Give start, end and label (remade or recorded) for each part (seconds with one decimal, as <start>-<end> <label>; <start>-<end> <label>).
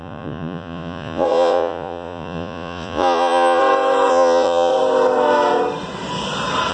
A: 0.0-3.6 remade; 3.6-4.1 recorded; 4.1-4.7 remade; 4.7-6.7 recorded